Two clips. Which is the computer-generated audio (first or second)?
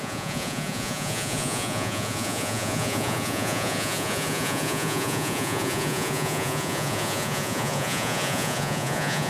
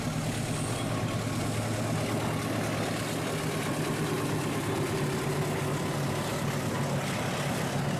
first